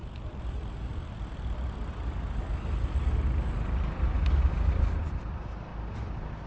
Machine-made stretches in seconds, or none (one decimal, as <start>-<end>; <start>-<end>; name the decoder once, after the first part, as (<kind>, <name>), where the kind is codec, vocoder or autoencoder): 0.5-0.9 (vocoder, BigVGAN v2); 4.7-5.7

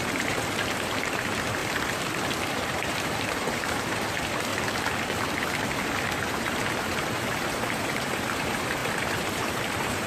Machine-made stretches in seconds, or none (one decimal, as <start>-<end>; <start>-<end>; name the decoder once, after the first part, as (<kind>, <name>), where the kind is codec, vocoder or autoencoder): 0.0-1.6 (vocoder, BigVGAN v2); 2.3-4.5; 5.8-10.1

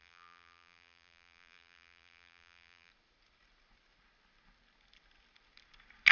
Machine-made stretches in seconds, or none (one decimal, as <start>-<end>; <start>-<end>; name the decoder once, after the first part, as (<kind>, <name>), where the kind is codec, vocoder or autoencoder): 0.0-2.9 (vocoder, BigVGAN v2)

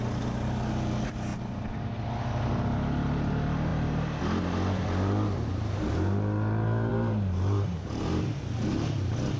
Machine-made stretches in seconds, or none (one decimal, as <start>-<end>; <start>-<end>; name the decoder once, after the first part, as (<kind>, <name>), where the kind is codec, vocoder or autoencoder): 1.3-2.1 (vocoder, BigVGAN v2); 6.9-8.4

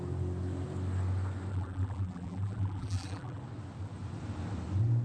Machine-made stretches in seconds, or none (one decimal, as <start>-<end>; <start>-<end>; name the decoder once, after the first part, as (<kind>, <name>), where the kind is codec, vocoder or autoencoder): 1.5-3.4 (vocoder, BigVGAN v2)

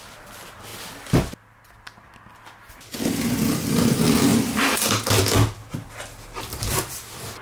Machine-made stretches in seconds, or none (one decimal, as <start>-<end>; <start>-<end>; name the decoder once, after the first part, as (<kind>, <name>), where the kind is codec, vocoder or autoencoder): 4.3-4.9 (vocoder, BigVGAN v2)

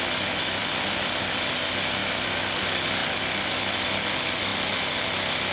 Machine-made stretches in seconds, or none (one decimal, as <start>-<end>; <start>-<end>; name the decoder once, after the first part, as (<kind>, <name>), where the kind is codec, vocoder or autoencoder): 0.6-1.4 (vocoder, BigVGAN v2); 2.0-2.6; 3.0-3.7